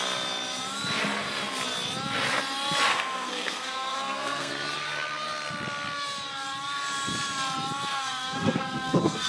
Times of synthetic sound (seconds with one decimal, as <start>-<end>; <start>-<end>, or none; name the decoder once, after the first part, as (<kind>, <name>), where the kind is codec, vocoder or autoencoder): 2.9-4.5 (codec, SNAC); 7.9-9.3